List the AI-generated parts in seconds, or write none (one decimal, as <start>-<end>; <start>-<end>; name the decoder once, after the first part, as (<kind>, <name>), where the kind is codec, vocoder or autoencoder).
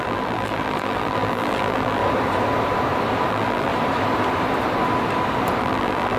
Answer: 0.0-2.0 (vocoder, BigVGAN v2); 3.3-3.7; 5.6-6.2